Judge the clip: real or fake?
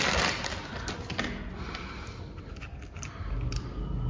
real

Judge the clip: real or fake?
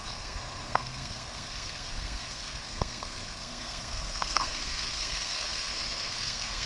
fake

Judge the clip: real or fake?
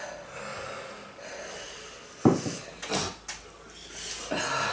real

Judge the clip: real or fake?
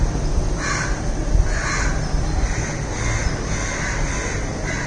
real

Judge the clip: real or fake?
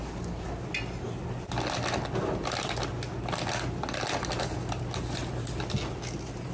real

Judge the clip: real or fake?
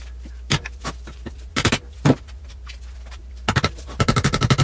real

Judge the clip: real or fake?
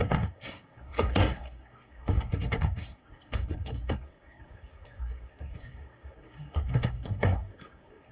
fake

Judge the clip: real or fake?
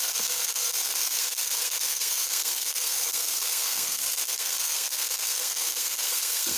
fake